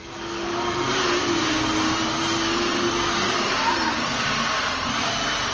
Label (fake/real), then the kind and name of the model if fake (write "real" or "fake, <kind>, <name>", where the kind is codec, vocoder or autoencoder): real